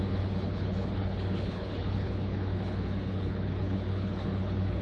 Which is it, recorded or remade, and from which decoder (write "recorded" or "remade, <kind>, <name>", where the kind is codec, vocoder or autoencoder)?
remade, codec, HILCodec